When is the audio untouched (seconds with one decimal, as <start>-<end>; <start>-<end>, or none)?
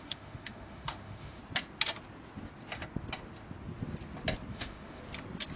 1.4-4.5; 5.0-5.6